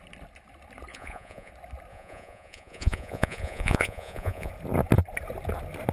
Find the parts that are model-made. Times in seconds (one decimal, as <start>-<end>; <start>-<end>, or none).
0.9-1.5; 1.9-4.5